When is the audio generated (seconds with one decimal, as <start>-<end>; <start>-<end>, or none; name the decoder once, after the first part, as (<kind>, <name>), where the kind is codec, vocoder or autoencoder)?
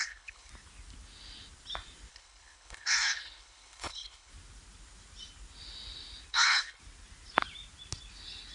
0.0-0.5 (codec, HILCodec); 2.1-4.3; 6.3-6.8